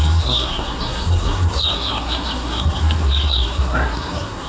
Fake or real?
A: fake